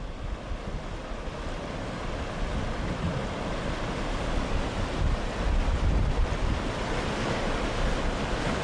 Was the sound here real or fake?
real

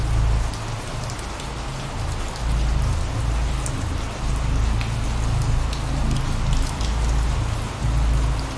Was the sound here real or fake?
real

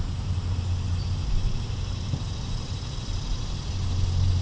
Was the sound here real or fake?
real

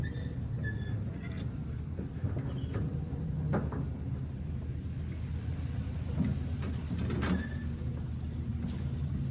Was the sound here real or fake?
real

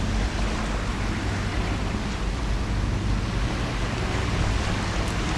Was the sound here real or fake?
real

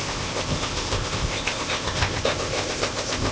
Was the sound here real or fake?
fake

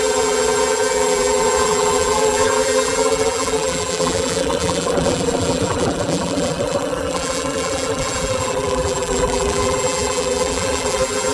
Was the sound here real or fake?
fake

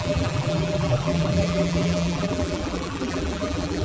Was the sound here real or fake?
fake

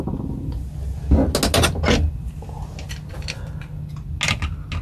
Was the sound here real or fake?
real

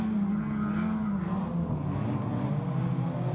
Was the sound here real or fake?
real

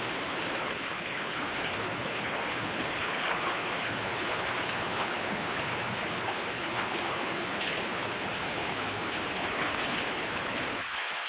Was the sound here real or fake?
fake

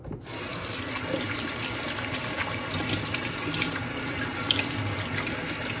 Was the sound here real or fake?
real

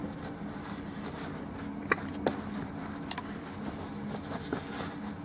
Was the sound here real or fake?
real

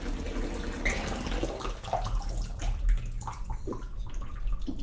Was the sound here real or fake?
real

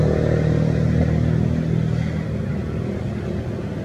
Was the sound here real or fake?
real